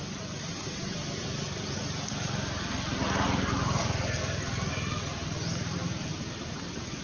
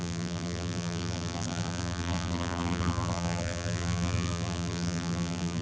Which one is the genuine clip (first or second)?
first